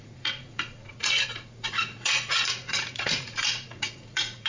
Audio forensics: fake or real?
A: fake